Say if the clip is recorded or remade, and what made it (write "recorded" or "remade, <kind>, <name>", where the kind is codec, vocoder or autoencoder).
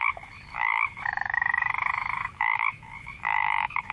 remade, autoencoder, DAC-VAE